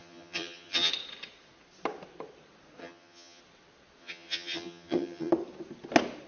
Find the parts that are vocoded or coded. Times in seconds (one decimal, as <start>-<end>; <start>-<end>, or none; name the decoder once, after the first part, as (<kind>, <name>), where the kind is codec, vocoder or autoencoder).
0.0-0.9 (vocoder, HiFi-GAN); 2.8-3.4; 4.0-5.3